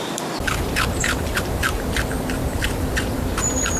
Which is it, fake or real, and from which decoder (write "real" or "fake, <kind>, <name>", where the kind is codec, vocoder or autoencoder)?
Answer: fake, vocoder, BigVGAN v2